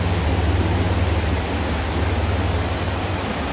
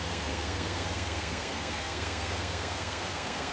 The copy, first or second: second